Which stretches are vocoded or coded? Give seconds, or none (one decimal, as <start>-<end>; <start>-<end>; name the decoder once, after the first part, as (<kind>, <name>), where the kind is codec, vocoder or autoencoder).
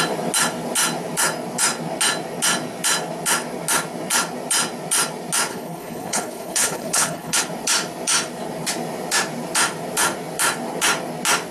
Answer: 5.5-7.4 (codec, HILCodec)